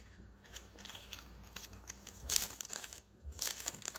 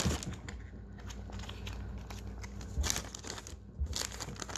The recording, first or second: second